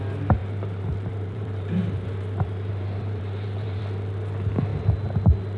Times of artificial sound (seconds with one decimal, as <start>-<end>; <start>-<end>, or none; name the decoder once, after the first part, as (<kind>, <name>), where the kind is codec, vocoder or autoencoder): 0.4-3.8 (vocoder, BigVGAN v2)